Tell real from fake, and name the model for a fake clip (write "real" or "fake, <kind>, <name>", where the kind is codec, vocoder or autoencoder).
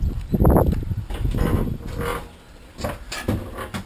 real